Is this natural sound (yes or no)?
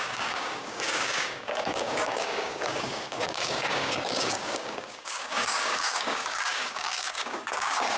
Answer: no